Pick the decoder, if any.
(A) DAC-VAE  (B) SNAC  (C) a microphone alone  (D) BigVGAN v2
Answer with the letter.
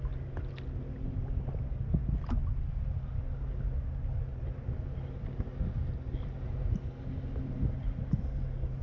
C